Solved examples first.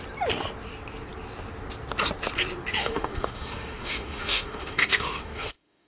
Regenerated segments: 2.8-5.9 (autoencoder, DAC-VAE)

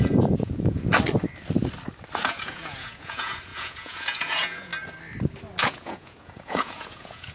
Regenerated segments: 0.0-0.9 (vocoder, Vocos); 2.2-4.7; 5.6-7.3

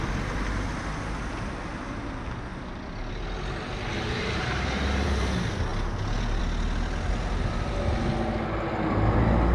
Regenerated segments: 3.9-5.3 (vocoder, BigVGAN v2)

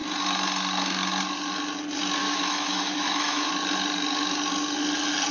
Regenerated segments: 2.2-3.5 (autoencoder, DAC-VAE)

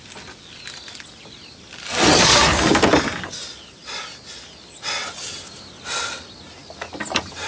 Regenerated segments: none

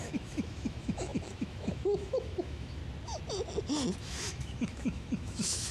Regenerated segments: 0.0-2.8 (autoencoder, DAC-VAE); 4.0-5.7